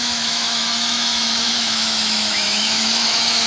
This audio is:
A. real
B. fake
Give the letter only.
B